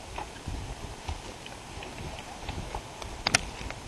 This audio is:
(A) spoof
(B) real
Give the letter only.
B